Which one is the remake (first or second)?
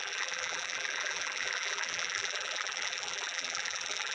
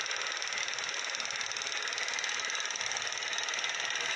first